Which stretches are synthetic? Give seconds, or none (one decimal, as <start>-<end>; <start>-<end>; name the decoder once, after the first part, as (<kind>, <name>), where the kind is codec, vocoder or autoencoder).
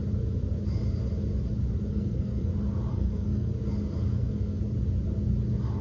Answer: 1.9-2.5 (codec, SNAC); 2.9-3.5; 4.1-4.6